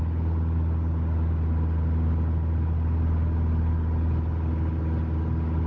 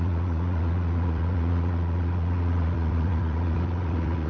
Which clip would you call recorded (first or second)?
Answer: first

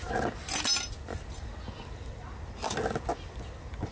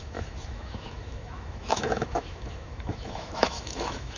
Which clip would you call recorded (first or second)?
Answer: first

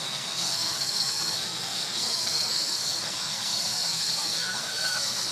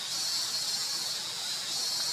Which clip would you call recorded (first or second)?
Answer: second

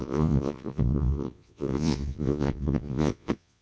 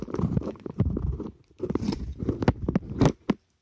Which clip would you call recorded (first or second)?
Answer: second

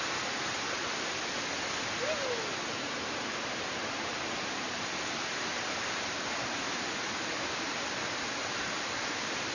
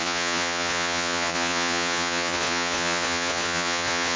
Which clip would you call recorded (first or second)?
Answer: first